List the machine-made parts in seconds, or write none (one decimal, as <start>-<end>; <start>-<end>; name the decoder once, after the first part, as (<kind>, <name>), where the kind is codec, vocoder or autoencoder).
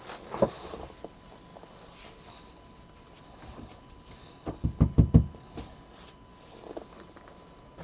none